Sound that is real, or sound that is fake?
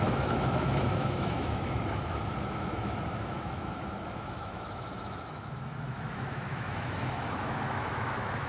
fake